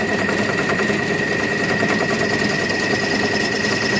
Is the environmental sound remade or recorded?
recorded